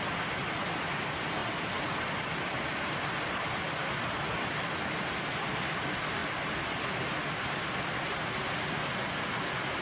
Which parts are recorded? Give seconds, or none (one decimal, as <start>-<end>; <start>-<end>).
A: 0.0-9.8